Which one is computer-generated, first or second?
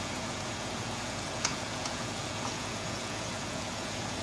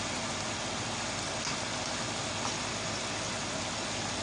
first